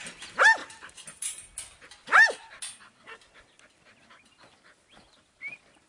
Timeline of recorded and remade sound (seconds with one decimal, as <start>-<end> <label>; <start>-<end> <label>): 0.0-5.9 recorded